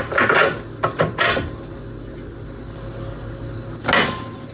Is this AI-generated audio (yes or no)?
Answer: no